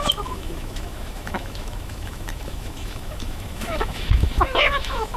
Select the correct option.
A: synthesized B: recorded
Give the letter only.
A